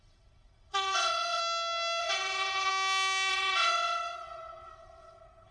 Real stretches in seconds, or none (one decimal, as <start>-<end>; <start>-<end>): 1.4-2.0; 2.7-3.3